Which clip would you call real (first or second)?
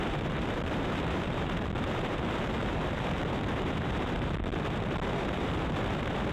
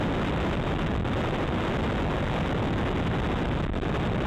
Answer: second